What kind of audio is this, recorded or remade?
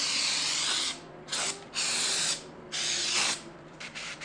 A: remade